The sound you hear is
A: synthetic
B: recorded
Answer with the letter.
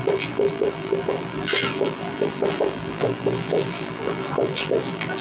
A